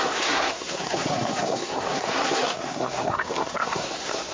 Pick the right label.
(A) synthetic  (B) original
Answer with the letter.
A